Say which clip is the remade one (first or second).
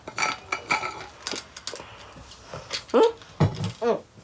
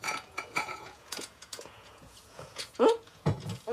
second